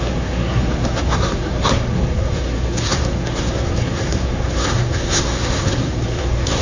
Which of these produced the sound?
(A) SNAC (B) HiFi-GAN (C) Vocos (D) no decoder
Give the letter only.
A